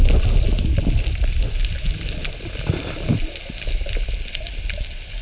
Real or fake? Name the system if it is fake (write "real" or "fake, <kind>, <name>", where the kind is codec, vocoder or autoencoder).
real